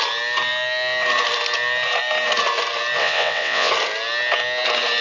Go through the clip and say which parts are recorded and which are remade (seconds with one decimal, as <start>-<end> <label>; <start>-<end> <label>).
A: 0.0-3.0 recorded; 3.0-3.7 remade; 3.7-5.0 recorded